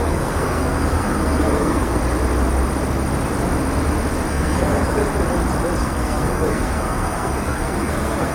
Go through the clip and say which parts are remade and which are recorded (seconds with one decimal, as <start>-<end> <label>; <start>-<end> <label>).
0.0-2.0 remade; 2.0-4.3 recorded; 4.3-5.0 remade; 5.0-5.8 recorded; 5.8-8.3 remade

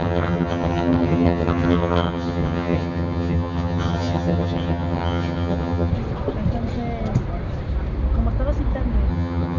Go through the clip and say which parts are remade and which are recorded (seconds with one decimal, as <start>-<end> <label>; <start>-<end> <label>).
0.0-5.9 remade; 5.9-9.1 recorded; 9.1-9.6 remade

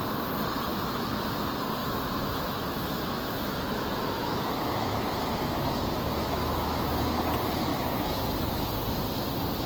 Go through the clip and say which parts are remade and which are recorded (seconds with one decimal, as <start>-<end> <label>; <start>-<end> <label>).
0.0-0.7 recorded; 0.7-1.2 remade; 1.2-1.8 recorded; 1.8-6.9 remade; 6.9-7.7 recorded; 7.7-8.7 remade; 8.7-9.7 recorded

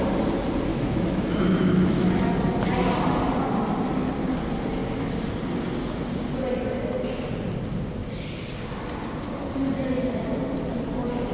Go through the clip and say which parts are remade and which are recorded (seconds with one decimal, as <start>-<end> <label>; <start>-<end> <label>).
0.0-0.7 recorded; 0.7-2.3 remade; 2.3-11.3 recorded

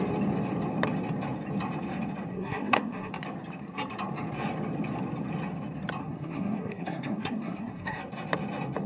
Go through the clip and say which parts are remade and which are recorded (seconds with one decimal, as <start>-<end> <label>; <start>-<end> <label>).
0.0-2.3 recorded; 2.3-3.1 remade; 3.1-6.0 recorded; 6.0-8.0 remade; 8.0-8.9 recorded

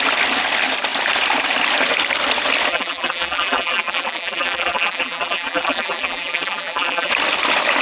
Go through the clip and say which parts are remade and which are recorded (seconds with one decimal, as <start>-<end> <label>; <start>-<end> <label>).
0.0-2.7 recorded; 2.7-7.1 remade; 7.1-7.8 recorded

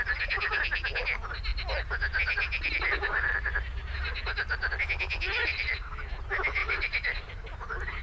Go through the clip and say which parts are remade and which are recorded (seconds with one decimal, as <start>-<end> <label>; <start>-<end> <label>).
0.0-5.4 recorded; 5.4-5.9 remade; 5.9-6.6 recorded; 6.6-7.3 remade; 7.3-8.0 recorded